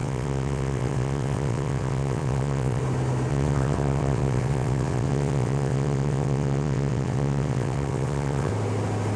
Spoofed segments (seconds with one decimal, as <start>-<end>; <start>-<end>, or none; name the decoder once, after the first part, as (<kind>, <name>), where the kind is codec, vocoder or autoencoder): 0.0-2.8 (vocoder, WaveNeXt); 3.3-8.5